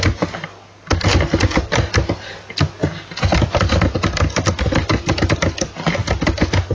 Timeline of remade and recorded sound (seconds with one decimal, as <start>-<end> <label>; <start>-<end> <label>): 0.0-6.7 recorded